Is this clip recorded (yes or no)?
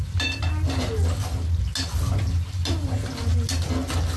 yes